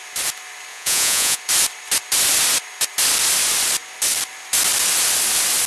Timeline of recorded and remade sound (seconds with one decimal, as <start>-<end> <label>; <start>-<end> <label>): 0.0-0.7 recorded; 0.7-1.4 remade; 1.4-5.7 recorded